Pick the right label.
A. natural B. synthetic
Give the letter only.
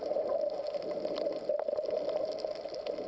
A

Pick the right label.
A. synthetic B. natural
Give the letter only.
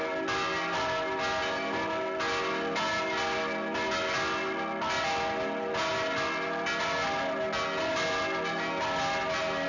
B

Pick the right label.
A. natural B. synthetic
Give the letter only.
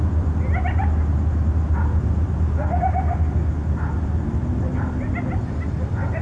A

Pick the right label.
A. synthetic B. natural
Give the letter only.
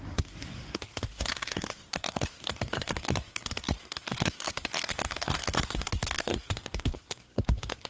A